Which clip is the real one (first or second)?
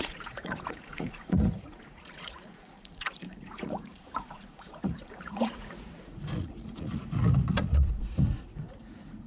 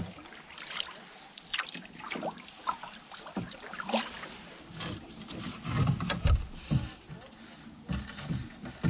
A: second